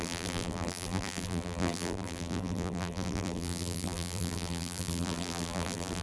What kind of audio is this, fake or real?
fake